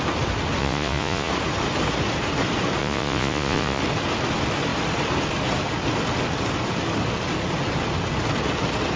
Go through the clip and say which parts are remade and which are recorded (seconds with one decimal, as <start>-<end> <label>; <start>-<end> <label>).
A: 0.0-0.6 recorded; 0.6-1.3 remade; 1.3-2.8 recorded; 2.8-3.8 remade; 3.8-9.0 recorded